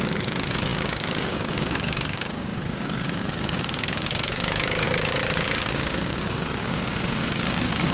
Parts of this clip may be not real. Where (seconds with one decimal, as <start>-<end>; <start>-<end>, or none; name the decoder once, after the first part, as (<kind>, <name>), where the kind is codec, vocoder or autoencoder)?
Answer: 0.0-7.9 (codec, DAC)